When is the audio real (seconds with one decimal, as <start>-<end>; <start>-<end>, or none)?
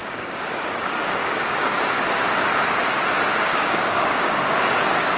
1.7-3.5